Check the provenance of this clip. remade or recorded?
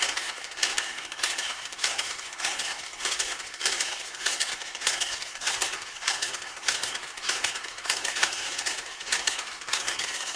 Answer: remade